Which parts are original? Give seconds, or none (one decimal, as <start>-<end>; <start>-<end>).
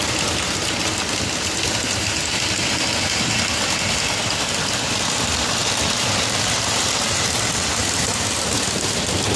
0.0-9.4